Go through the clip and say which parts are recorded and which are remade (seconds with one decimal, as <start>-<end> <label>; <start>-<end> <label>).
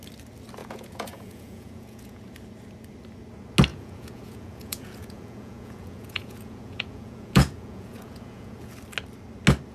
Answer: 0.0-0.6 recorded; 0.6-2.2 remade; 2.2-3.7 recorded; 3.7-8.7 remade; 8.7-9.7 recorded